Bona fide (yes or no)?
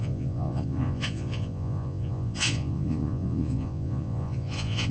no